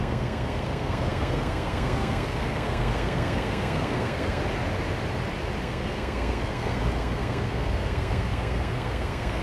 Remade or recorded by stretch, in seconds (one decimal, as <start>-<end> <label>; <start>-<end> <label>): 0.0-4.4 remade; 4.4-5.6 recorded; 5.6-9.4 remade